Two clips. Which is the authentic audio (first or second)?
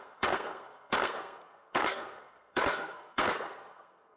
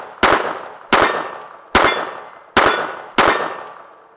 second